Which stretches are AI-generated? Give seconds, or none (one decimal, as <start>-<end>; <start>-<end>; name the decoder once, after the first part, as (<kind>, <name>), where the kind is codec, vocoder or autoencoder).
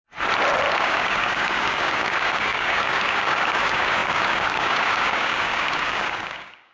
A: 0.7-6.7 (codec, DAC)